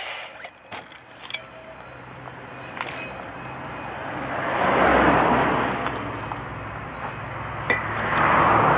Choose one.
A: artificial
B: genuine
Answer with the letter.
B